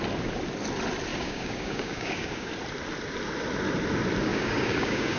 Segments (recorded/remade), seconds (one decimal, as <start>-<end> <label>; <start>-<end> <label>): 0.0-1.1 recorded; 1.1-2.5 remade; 2.5-4.3 recorded; 4.3-5.2 remade